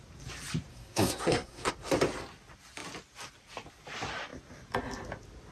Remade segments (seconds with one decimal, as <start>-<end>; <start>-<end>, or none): 0.7-1.7